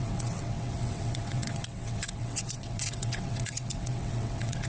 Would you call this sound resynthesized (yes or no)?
yes